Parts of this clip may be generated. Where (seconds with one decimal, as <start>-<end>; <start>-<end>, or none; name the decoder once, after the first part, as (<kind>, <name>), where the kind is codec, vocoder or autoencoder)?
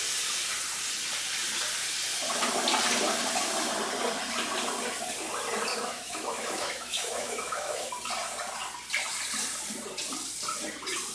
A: 5.7-7.9 (autoencoder, DAC-VAE)